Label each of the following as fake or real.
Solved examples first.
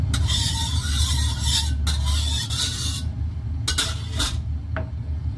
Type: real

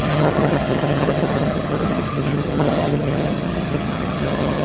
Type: fake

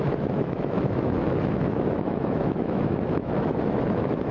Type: fake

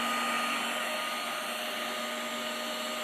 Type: real